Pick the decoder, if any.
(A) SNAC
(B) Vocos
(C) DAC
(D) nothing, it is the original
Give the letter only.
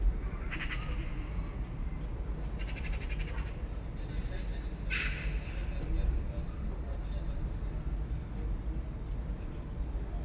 D